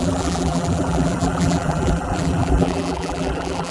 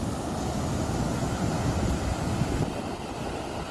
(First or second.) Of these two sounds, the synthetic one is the first